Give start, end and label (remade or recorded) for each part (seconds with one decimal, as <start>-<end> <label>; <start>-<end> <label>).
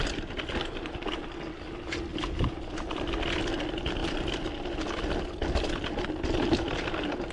0.0-2.1 recorded; 2.1-3.4 remade; 3.4-7.3 recorded